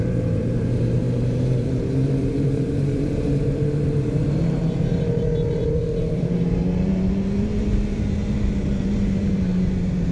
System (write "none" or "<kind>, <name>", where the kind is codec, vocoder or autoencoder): vocoder, BigVGAN v2